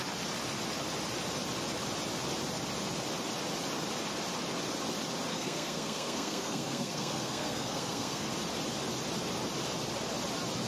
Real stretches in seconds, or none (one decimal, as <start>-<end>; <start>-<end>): 0.0-5.3; 8.3-10.7